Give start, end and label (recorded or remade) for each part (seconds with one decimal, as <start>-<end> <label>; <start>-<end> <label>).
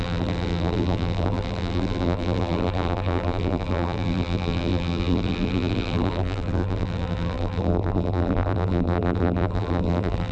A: 0.0-10.3 remade